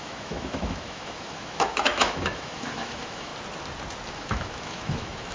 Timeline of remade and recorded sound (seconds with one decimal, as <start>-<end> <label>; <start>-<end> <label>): 0.0-3.3 remade; 3.3-4.1 recorded; 4.1-5.3 remade